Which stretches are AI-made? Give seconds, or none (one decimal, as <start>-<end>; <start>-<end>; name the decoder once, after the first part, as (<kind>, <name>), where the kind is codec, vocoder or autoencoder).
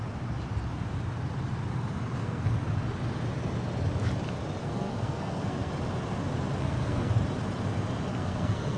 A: 2.2-2.7 (codec, SNAC); 4.6-5.7; 6.6-7.1; 8.1-8.8